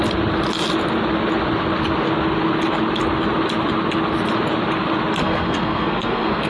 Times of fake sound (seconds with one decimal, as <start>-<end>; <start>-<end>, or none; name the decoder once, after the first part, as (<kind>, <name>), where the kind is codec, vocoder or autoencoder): 5.2-6.5 (codec, SNAC)